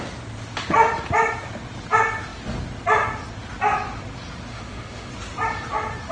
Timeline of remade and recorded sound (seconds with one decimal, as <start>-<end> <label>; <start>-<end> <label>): 0.0-4.5 recorded; 4.5-5.1 remade; 5.1-6.1 recorded